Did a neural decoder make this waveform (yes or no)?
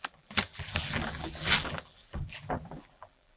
yes